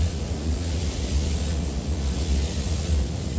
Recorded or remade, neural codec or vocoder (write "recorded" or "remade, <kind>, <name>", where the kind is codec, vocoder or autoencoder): remade, vocoder, Vocos